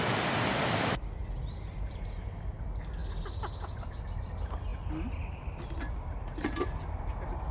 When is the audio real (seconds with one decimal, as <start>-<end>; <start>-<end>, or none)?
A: 0.0-7.5